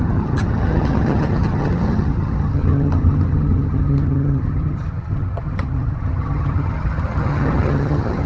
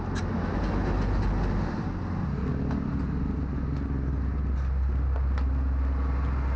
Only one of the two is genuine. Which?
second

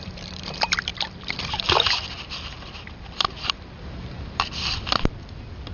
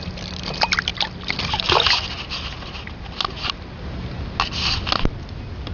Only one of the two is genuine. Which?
second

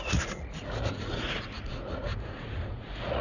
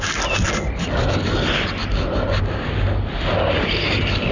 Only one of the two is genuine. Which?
second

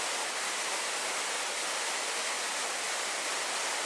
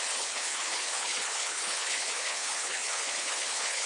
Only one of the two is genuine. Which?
first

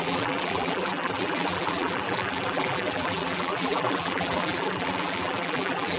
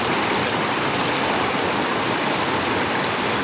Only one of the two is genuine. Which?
second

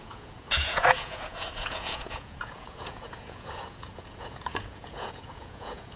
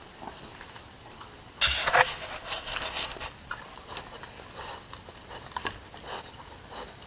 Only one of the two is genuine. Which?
second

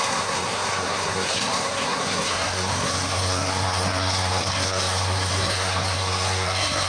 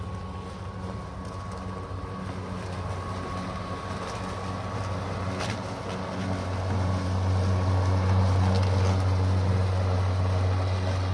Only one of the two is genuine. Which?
second